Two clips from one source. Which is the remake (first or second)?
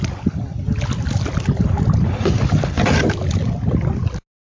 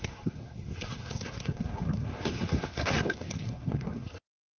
second